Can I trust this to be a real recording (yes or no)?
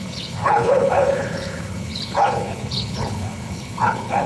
no